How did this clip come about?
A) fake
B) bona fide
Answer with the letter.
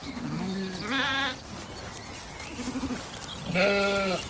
B